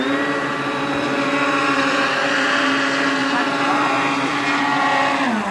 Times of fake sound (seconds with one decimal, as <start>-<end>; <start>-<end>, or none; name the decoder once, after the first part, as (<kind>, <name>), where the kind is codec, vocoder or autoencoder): 0.4-2.2 (vocoder, BigVGAN v2); 3.2-4.3